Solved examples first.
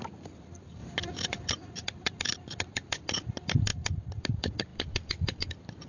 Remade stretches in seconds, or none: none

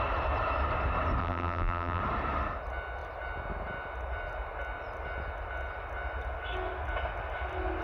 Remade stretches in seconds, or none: 1.2-2.0 (vocoder, BigVGAN v2)